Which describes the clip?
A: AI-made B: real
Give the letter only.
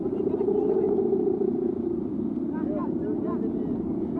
B